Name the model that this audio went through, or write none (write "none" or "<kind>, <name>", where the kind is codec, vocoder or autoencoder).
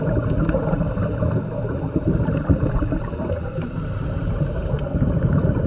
none